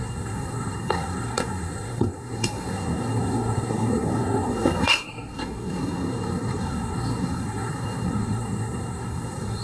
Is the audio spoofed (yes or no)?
yes